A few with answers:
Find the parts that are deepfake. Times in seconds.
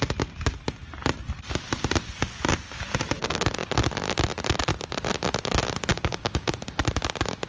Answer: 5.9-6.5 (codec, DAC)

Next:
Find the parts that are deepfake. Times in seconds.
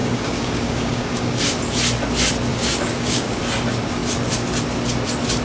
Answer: 0.0-1.4 (codec, DAC); 2.5-3.4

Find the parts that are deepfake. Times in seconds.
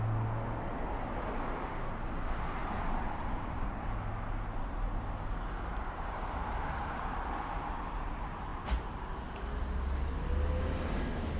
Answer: 2.6-3.9 (vocoder, BigVGAN v2); 5.7-7.0; 8.5-9.3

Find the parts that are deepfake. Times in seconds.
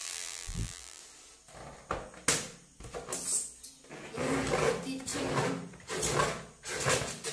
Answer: 0.0-1.0 (vocoder, BigVGAN v2)